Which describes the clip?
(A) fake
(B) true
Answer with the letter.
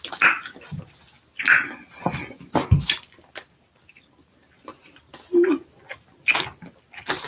B